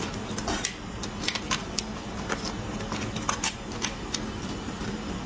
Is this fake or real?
real